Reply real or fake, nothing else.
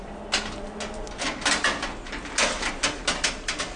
real